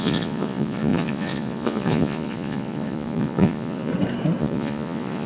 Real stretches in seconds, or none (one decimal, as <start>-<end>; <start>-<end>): 3.9-4.4